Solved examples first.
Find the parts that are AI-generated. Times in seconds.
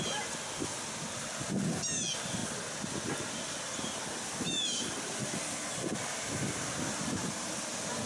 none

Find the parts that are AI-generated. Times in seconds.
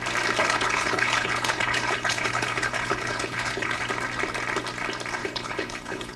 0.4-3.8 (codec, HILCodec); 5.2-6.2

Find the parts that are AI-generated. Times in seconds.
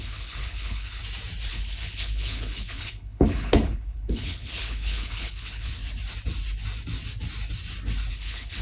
0.0-1.0 (codec, HILCodec); 1.5-5.8; 8.1-8.6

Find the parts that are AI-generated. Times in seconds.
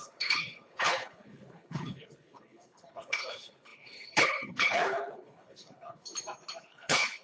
0.0-6.1 (codec, HILCodec); 6.6-7.2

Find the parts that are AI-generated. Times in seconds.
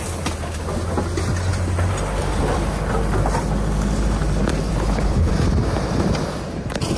4.7-5.3 (codec, HILCodec)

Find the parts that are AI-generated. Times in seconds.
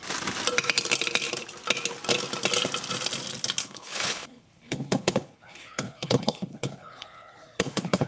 3.6-8.1 (codec, HILCodec)